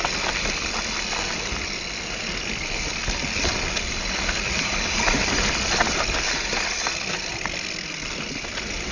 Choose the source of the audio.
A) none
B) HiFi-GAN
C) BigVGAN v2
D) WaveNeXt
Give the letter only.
A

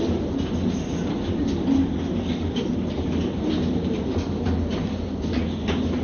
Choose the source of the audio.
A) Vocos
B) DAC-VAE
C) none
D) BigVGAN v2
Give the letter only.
C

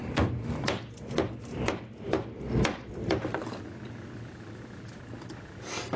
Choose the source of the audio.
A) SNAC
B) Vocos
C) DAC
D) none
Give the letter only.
D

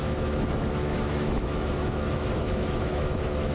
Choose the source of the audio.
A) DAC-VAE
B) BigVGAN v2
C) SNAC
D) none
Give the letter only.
A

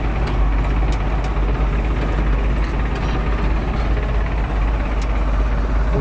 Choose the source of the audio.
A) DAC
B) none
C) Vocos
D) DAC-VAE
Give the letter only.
B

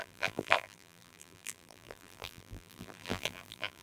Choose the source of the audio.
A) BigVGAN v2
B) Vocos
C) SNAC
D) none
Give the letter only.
A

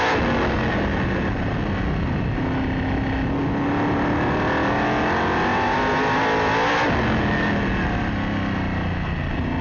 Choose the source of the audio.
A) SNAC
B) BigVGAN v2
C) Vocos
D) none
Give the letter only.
D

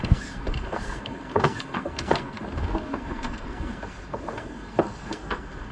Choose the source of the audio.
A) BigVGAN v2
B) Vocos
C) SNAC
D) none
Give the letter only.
C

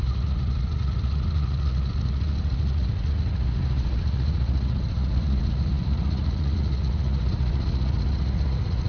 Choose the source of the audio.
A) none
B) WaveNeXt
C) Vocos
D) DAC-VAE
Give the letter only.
C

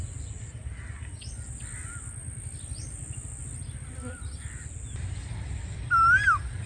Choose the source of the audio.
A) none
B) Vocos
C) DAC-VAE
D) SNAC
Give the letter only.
A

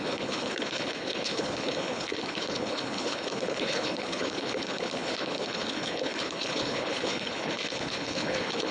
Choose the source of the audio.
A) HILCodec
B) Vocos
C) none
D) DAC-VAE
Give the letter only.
A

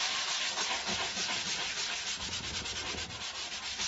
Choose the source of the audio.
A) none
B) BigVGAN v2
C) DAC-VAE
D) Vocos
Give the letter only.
A